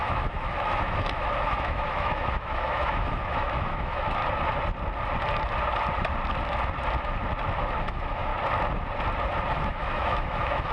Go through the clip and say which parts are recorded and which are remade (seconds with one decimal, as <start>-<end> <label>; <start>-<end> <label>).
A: 0.0-4.2 remade; 4.2-7.8 recorded; 7.8-8.3 remade; 8.3-9.5 recorded; 9.5-10.7 remade